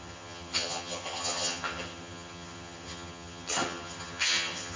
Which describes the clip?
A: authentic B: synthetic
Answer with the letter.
B